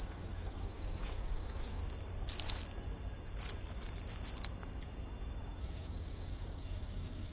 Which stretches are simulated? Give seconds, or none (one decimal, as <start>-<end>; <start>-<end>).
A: 0.0-1.8; 5.6-7.3